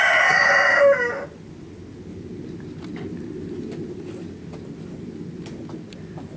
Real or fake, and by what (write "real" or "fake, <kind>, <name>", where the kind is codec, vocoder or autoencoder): real